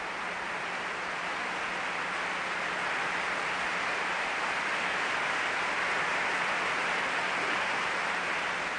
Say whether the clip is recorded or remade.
recorded